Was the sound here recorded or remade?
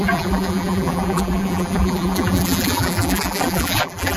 remade